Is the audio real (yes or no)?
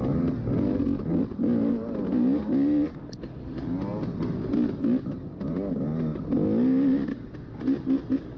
yes